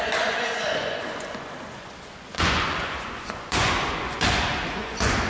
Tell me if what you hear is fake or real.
fake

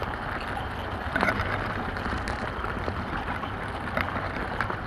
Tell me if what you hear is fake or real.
real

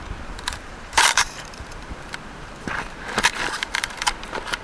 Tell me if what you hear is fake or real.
fake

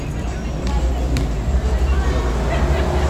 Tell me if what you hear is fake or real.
real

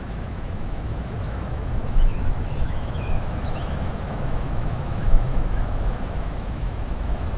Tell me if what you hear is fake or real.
fake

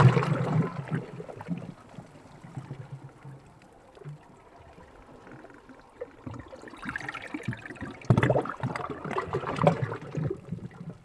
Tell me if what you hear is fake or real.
real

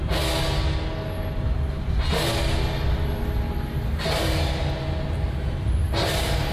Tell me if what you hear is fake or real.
real